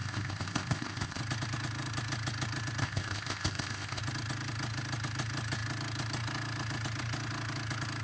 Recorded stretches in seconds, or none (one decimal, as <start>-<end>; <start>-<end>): 1.2-2.8; 4.0-8.0